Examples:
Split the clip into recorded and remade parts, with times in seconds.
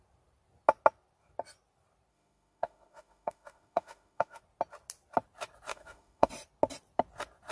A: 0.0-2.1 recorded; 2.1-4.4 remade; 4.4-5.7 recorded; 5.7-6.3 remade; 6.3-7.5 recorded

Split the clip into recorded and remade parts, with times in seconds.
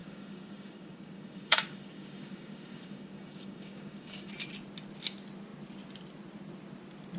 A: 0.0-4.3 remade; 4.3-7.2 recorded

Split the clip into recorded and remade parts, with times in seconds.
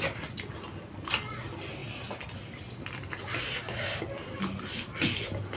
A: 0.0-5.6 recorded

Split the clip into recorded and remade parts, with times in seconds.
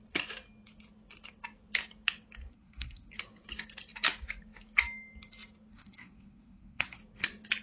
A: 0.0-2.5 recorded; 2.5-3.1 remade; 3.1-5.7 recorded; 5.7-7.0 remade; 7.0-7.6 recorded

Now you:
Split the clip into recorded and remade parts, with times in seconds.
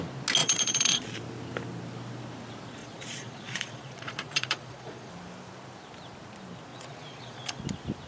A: 0.0-0.4 recorded; 0.4-1.2 remade; 1.2-2.8 recorded; 2.8-5.1 remade; 5.1-6.7 recorded; 6.7-7.6 remade; 7.6-8.1 recorded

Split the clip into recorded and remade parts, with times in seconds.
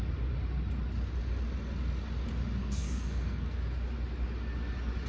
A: 0.0-2.6 recorded; 2.6-3.6 remade; 3.6-5.1 recorded